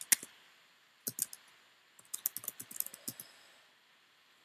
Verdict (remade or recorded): recorded